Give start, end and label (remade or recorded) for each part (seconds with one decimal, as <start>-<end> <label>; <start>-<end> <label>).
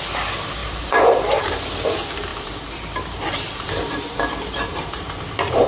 0.0-0.6 recorded; 0.6-1.7 remade; 1.7-2.3 recorded; 2.3-5.7 remade